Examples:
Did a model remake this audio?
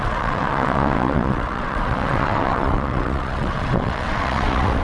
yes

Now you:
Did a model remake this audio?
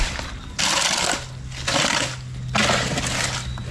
no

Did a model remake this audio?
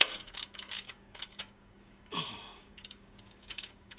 yes